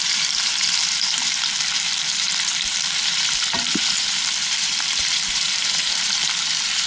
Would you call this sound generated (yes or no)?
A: yes